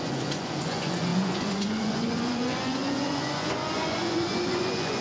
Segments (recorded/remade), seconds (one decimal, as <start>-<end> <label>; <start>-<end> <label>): 0.0-5.0 remade